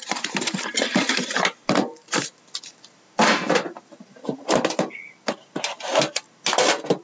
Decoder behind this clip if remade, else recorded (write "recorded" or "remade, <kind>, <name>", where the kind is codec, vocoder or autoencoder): remade, vocoder, BigVGAN v2